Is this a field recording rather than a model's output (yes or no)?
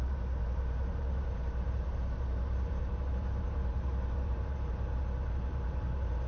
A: no